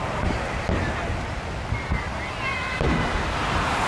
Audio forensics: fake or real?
real